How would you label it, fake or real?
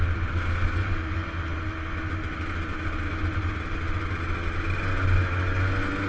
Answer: real